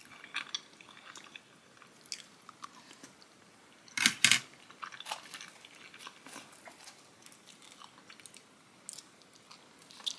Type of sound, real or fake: real